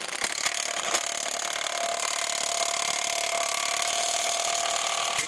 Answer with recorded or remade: recorded